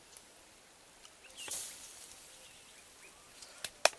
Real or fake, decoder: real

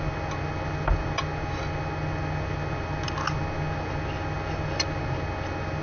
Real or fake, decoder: real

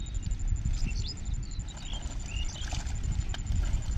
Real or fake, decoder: real